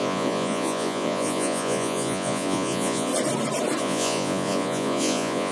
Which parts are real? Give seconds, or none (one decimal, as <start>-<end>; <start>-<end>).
3.1-3.8